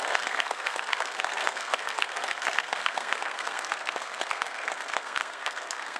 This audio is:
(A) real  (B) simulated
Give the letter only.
B